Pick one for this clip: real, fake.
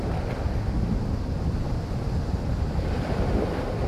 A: real